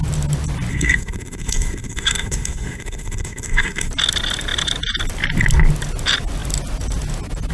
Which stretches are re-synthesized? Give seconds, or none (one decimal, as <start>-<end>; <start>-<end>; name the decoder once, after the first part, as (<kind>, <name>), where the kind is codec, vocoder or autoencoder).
0.7-3.9 (codec, SNAC)

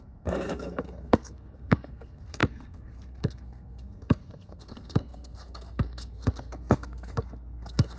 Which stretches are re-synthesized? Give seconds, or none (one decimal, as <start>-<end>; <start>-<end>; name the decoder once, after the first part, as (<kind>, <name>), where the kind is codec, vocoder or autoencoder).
0.0-8.0 (codec, SNAC)